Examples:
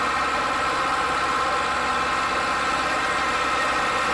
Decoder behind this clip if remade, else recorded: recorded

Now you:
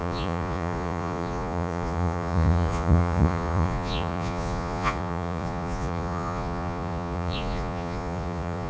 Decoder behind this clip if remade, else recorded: remade, vocoder, Vocos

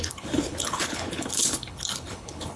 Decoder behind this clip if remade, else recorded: remade, codec, HILCodec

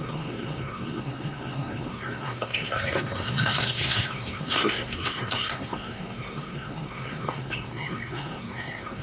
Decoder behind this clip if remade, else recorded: remade, codec, SNAC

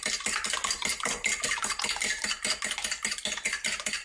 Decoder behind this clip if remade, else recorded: recorded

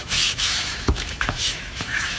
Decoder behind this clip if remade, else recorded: remade, autoencoder, DAC-VAE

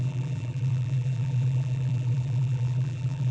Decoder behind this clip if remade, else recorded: remade, vocoder, BigVGAN v2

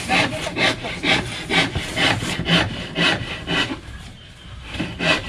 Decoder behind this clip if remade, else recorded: remade, vocoder, BigVGAN v2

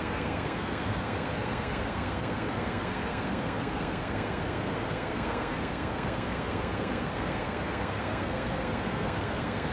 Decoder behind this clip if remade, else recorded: remade, codec, SNAC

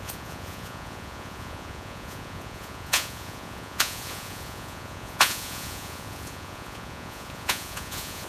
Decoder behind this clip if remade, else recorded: remade, vocoder, Vocos